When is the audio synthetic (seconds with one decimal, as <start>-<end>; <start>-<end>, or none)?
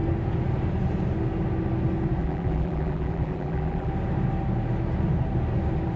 2.2-3.9